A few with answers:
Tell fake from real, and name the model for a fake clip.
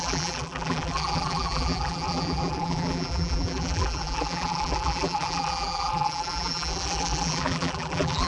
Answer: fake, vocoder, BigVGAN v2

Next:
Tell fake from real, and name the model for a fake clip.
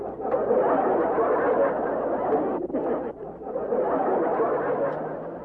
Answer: real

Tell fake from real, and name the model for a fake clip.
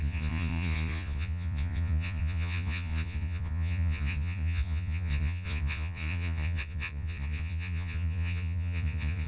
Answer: fake, vocoder, Vocos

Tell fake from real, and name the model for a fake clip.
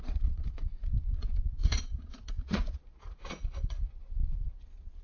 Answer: fake, vocoder, Vocos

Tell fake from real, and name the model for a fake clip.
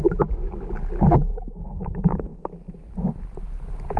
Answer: real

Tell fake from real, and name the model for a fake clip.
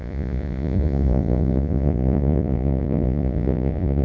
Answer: fake, vocoder, Vocos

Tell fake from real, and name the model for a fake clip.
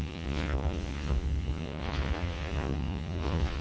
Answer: fake, vocoder, Vocos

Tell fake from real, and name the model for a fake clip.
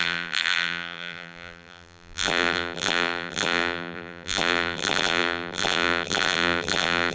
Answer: fake, vocoder, BigVGAN v2